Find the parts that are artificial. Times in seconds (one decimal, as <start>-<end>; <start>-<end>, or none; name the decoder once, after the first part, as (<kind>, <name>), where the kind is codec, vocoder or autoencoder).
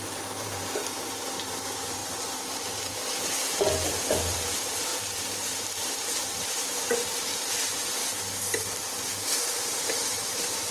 0.0-8.0 (vocoder, BigVGAN v2); 9.9-10.7